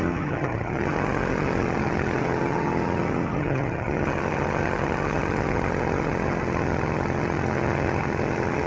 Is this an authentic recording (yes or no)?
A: no